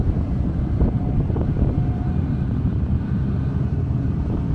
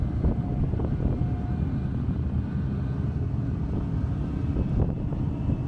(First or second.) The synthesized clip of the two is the first